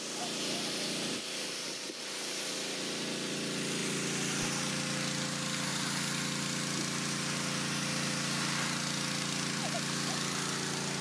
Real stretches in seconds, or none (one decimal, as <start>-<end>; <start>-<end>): 0.0-11.0